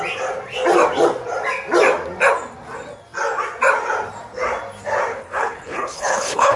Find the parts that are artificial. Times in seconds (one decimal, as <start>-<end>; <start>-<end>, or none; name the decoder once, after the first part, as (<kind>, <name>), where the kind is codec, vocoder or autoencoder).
5.1-6.6 (codec, HILCodec)